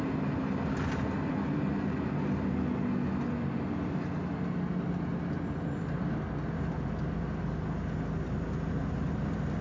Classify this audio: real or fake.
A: real